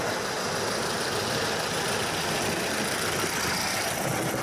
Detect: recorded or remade recorded